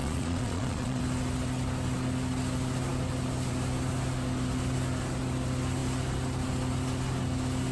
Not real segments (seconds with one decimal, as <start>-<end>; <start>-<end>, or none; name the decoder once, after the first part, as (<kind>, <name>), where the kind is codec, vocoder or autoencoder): 0.0-1.0 (vocoder, Vocos)